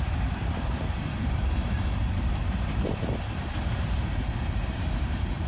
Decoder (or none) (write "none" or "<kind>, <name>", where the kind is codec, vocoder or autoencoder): vocoder, BigVGAN v2